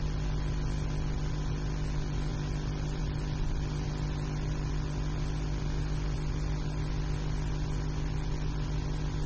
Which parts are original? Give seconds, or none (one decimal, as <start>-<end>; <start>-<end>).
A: 0.0-2.3; 4.7-9.3